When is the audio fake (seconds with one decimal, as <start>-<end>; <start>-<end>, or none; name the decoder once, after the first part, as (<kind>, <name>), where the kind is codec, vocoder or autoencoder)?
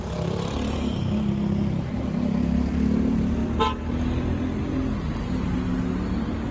none